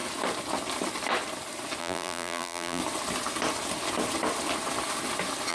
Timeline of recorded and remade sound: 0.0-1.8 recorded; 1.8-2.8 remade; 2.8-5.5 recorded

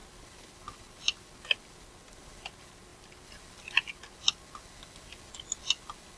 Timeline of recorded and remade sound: 0.0-6.2 recorded

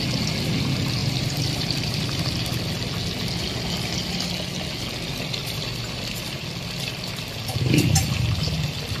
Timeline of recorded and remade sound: 0.0-1.0 recorded; 1.0-2.2 remade; 2.2-5.4 recorded; 5.4-6.2 remade; 6.2-9.0 recorded

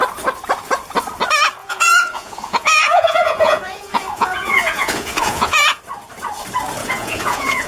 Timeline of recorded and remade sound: 0.0-1.6 recorded; 1.6-5.8 remade; 5.8-6.8 recorded; 6.8-7.7 remade

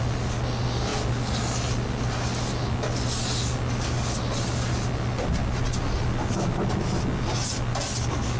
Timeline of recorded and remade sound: 0.0-8.4 recorded

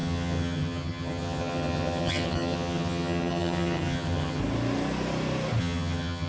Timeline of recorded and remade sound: 0.0-4.4 remade; 4.4-5.6 recorded; 5.6-6.3 remade

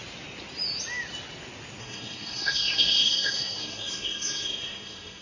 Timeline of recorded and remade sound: 0.0-1.8 recorded; 1.8-5.2 remade

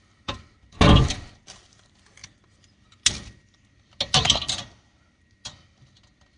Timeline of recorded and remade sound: 0.0-6.4 recorded